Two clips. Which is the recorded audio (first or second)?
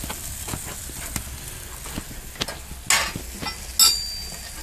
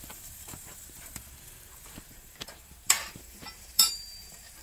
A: first